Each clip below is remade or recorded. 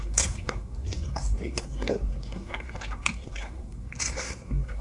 remade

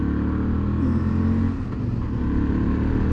recorded